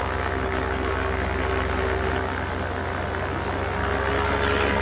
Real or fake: real